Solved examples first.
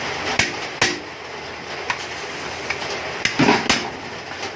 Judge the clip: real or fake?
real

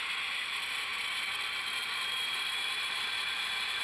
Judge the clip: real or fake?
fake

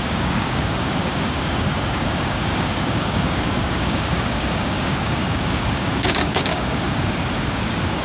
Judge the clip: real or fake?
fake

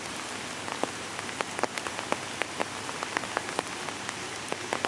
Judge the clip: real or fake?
real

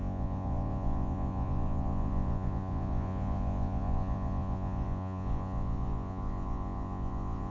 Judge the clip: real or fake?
fake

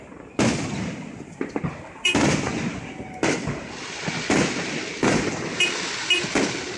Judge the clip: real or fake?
real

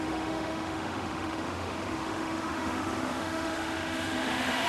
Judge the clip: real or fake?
fake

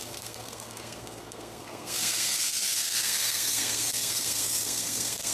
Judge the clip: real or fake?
fake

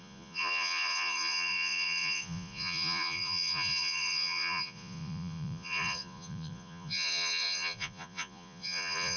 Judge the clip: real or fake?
fake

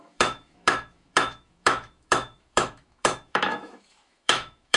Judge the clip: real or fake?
fake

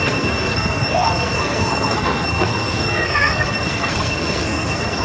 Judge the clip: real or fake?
fake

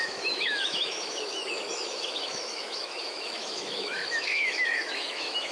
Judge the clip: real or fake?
fake